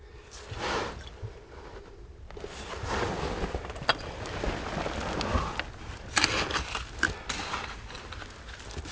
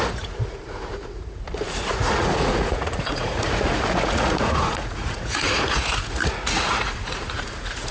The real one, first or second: first